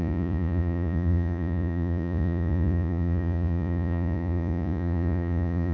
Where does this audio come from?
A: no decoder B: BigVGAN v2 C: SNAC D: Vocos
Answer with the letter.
D